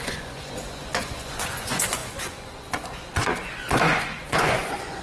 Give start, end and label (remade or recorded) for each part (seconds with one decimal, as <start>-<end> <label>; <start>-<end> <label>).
0.0-5.0 remade